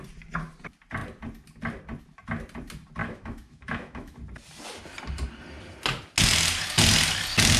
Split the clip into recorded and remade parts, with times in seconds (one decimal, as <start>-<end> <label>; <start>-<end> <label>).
0.0-3.0 recorded; 3.0-4.2 remade; 4.2-7.6 recorded